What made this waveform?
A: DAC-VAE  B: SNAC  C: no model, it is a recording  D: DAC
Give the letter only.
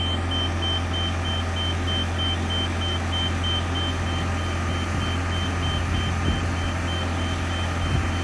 C